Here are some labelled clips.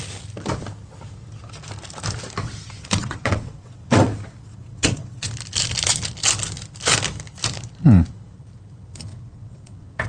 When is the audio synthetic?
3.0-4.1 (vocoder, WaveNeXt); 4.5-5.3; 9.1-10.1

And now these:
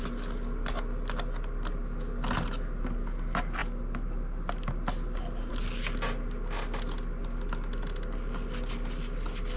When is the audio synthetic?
none

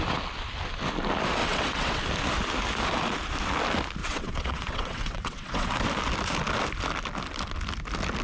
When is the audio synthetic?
1.4-2.0 (vocoder, WaveNeXt); 4.0-5.7

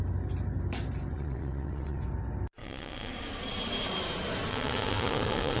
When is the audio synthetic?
1.1-2.0 (vocoder, WaveNeXt); 2.6-3.1; 4.5-5.6

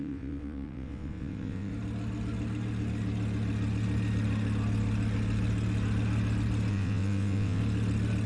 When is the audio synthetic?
0.0-1.7 (vocoder, WaveNeXt); 6.7-7.6

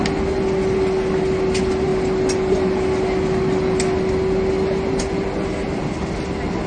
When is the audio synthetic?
none